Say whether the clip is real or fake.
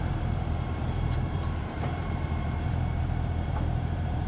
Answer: fake